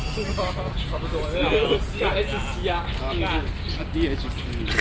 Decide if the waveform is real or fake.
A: real